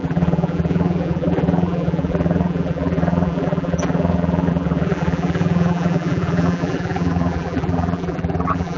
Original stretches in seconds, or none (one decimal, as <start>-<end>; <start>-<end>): none